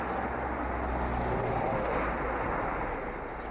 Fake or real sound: real